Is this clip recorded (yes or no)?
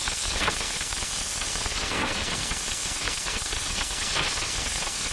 no